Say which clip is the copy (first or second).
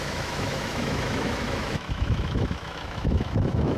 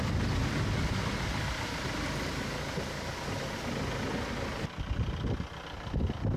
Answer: first